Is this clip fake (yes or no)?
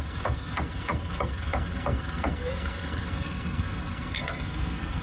yes